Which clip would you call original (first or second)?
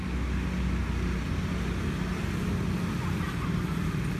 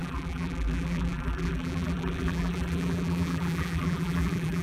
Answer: first